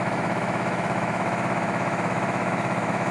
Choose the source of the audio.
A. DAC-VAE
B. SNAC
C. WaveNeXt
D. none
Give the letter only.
A